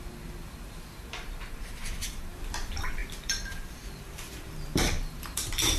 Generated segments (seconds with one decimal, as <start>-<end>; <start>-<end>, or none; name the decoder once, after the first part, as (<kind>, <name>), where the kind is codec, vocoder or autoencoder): 0.0-5.8 (vocoder, BigVGAN v2)